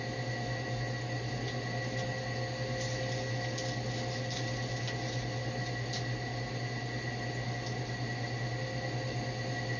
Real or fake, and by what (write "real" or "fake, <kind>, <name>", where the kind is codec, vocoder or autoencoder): real